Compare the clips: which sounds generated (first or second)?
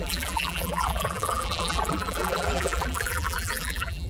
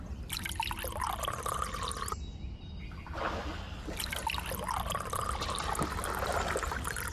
first